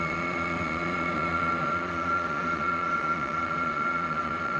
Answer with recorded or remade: remade